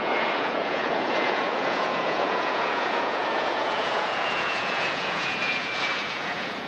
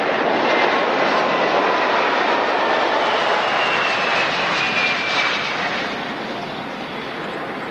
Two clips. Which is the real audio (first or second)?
second